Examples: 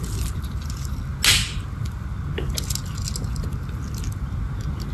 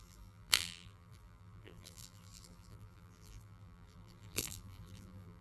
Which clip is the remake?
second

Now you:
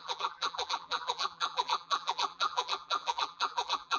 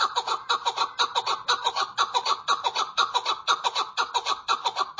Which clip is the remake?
first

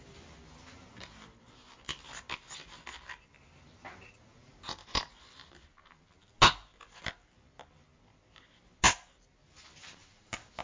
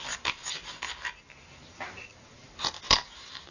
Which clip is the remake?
second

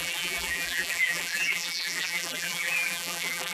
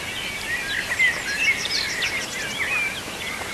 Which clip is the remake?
first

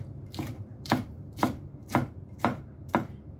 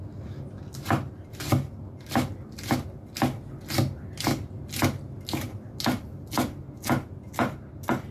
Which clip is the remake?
first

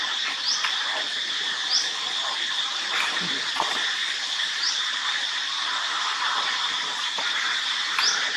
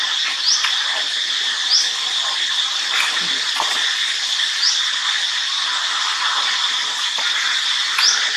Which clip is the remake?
first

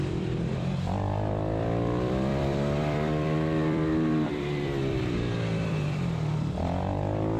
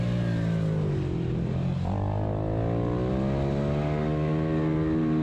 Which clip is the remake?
first